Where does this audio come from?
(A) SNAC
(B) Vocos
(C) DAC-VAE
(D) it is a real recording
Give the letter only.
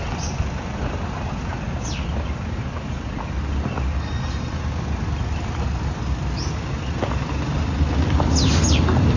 D